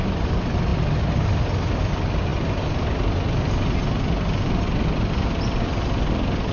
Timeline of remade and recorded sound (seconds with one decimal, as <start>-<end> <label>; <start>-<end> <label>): 0.0-6.5 recorded